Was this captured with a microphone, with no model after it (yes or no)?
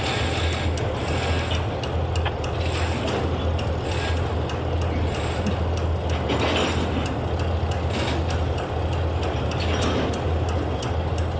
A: yes